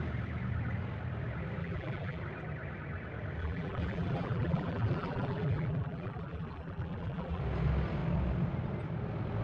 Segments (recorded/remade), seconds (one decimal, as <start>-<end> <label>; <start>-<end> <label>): 0.0-1.6 recorded; 1.6-2.2 remade; 2.2-3.4 recorded; 3.4-7.4 remade; 7.4-9.4 recorded